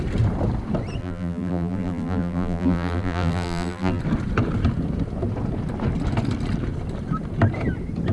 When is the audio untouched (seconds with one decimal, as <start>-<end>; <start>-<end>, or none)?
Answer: 0.0-1.0; 4.0-8.1